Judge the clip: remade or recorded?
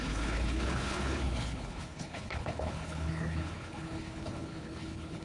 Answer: remade